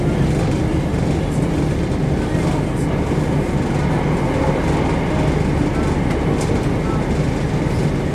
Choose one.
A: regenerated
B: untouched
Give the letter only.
B